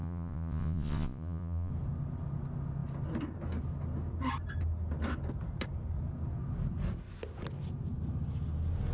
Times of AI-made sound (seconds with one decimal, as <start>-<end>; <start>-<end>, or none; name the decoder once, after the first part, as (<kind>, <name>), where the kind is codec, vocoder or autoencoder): 0.0-1.7 (vocoder, Vocos)